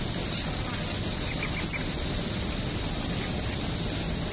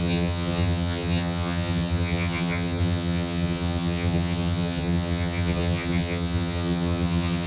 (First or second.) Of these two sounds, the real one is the first